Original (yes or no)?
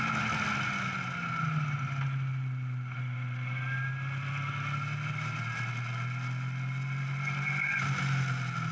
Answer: yes